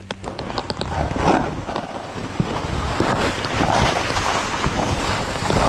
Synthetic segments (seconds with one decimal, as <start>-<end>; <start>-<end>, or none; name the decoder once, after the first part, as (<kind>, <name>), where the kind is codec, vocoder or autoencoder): none